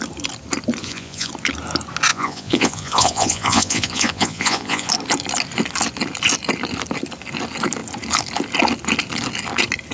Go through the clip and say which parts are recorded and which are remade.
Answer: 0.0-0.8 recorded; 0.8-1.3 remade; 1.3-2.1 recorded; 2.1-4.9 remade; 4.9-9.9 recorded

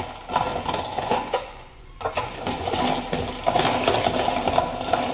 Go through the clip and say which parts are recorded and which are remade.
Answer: 0.0-0.5 recorded; 0.5-2.8 remade; 2.8-5.1 recorded

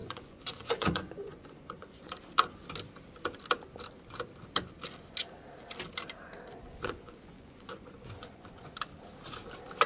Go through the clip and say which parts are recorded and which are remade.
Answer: 0.0-2.1 remade; 2.1-6.6 recorded; 6.6-8.8 remade; 8.8-9.9 recorded

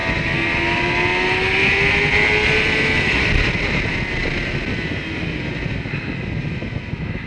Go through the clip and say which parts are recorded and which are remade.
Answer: 0.0-7.3 recorded

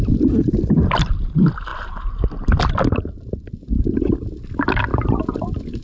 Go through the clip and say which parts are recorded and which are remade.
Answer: 0.0-5.8 recorded

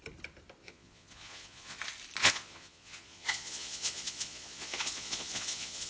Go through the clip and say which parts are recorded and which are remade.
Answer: 0.0-0.6 recorded; 0.6-1.8 remade; 1.8-2.2 recorded; 2.2-5.9 remade

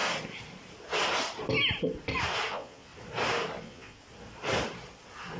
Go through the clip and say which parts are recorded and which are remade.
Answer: 0.0-2.5 recorded; 2.5-2.9 remade; 2.9-3.6 recorded; 3.6-4.0 remade; 4.0-5.4 recorded

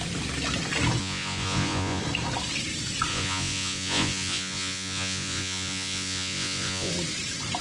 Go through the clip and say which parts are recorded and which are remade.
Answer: 0.0-1.0 recorded; 1.0-2.0 remade; 2.0-3.1 recorded; 3.1-6.9 remade; 6.9-7.6 recorded